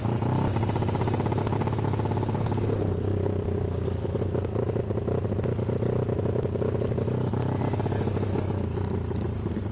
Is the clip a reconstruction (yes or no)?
no